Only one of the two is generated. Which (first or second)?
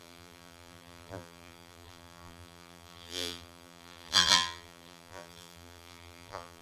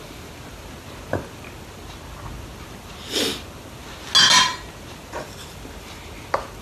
first